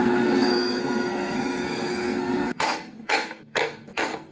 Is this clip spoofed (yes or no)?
yes